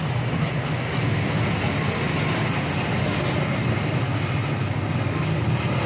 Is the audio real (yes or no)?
yes